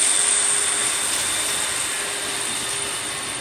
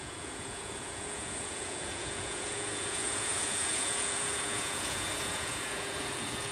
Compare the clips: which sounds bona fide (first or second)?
first